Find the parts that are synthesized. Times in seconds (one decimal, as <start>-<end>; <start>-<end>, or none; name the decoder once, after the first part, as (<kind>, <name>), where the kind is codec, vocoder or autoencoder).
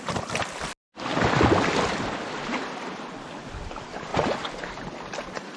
none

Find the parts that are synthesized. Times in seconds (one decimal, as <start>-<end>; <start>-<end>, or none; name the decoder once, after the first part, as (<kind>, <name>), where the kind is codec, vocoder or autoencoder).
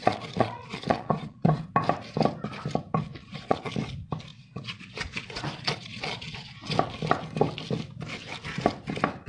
0.0-1.6 (vocoder, Vocos); 3.1-3.7; 4.3-6.7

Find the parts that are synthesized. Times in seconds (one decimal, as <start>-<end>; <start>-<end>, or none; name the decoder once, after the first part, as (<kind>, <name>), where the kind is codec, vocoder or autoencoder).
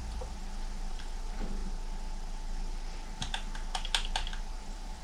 0.9-1.6 (vocoder, BigVGAN v2); 4.6-5.0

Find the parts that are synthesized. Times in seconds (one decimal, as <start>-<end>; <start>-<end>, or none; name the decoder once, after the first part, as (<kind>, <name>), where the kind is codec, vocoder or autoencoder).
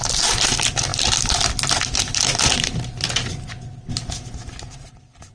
none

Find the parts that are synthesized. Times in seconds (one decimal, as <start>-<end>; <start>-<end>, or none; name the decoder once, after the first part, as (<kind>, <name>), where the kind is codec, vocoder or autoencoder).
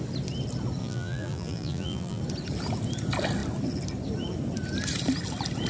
0.8-2.2 (vocoder, BigVGAN v2)